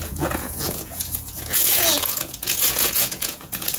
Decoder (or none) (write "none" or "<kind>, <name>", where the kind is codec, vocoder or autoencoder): vocoder, Vocos